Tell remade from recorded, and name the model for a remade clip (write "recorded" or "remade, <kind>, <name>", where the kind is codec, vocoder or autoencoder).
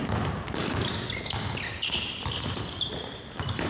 recorded